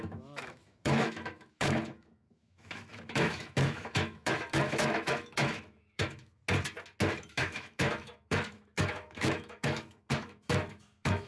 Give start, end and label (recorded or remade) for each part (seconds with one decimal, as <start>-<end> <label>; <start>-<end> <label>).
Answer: 0.0-6.4 remade; 6.4-7.2 recorded; 7.2-11.3 remade